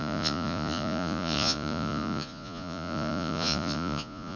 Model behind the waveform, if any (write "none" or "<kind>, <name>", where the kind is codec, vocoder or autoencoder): vocoder, Vocos